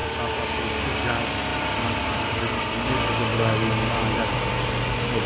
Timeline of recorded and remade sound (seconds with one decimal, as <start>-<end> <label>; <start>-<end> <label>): 0.0-0.8 remade; 0.8-1.5 recorded; 1.5-2.4 remade; 2.4-5.3 recorded